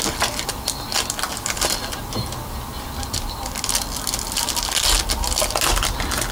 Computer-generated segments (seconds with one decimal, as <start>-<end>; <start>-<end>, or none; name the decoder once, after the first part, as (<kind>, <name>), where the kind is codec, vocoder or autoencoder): 3.0-3.5 (vocoder, BigVGAN v2)